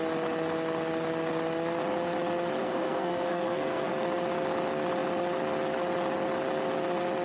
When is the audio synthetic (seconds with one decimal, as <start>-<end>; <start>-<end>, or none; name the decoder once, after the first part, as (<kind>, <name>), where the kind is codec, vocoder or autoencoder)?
2.6-3.9 (codec, SNAC)